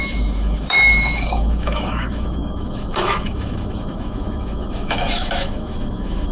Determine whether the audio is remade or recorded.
remade